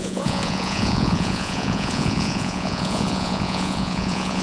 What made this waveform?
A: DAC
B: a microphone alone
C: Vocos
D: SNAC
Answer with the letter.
C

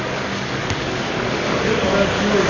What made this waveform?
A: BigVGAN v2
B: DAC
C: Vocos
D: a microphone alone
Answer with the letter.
B